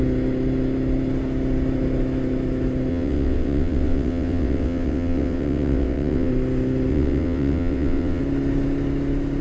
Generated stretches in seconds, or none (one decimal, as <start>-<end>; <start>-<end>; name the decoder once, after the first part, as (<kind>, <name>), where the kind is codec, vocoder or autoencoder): 2.9-6.3 (vocoder, WaveNeXt); 6.9-8.2